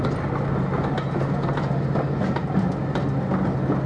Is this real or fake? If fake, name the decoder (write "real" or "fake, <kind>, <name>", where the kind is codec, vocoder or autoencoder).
real